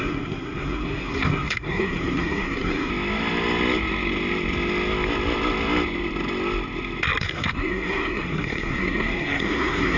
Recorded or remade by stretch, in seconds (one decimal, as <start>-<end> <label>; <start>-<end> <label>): 0.0-2.9 remade; 2.9-7.2 recorded; 7.2-10.0 remade